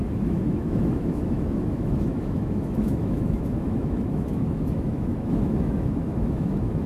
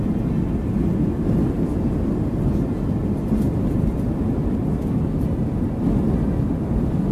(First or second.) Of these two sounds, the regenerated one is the first